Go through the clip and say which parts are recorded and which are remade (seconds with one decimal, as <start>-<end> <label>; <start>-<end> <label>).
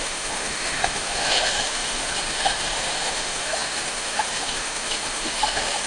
0.0-5.9 remade